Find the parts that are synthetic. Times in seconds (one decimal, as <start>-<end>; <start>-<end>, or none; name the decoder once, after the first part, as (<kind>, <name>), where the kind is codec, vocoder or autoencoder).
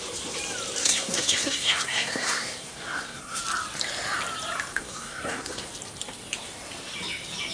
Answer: 0.8-3.4 (codec, SNAC); 4.7-5.7